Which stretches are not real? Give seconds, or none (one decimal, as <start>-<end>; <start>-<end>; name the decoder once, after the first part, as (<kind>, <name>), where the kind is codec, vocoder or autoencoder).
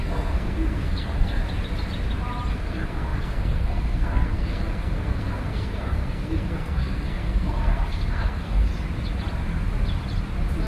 0.0-1.4 (codec, SNAC); 2.5-8.7